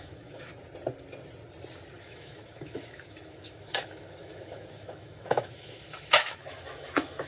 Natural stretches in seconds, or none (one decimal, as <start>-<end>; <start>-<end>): 0.5-2.0